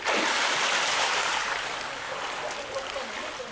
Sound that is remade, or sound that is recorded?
recorded